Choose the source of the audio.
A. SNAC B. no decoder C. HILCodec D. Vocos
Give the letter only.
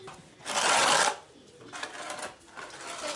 B